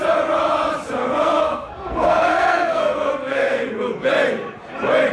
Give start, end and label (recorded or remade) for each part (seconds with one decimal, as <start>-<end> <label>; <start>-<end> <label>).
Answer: 0.0-1.0 recorded; 1.0-4.1 remade; 4.1-5.1 recorded